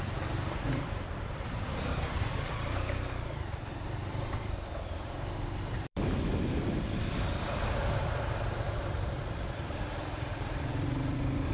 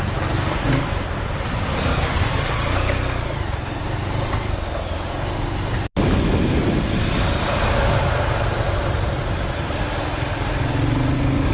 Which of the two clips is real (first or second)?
second